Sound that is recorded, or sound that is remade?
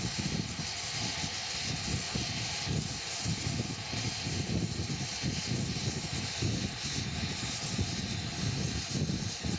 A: recorded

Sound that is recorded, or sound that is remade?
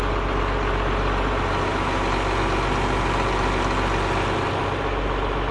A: recorded